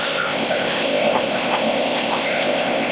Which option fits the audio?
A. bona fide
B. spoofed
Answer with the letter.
B